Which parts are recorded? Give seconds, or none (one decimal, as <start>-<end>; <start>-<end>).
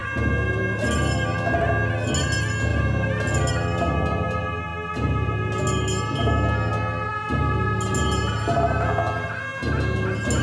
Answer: 0.0-10.4